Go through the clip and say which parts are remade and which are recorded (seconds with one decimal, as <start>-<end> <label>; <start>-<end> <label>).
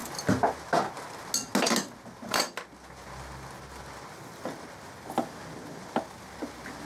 0.0-6.9 recorded